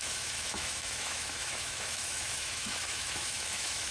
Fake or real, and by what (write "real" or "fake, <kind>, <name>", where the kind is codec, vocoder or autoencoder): fake, autoencoder, DAC-VAE